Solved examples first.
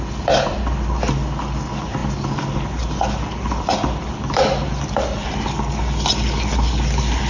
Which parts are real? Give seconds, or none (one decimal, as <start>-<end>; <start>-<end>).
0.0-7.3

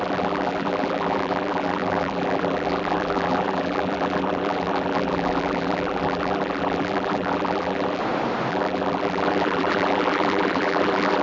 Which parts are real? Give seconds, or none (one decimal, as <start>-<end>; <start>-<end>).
8.0-8.5

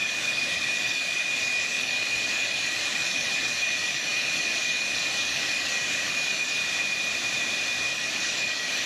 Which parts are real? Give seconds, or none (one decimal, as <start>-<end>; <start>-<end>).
6.6-7.8

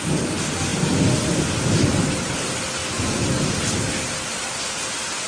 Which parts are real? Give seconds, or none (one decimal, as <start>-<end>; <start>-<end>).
0.0-5.3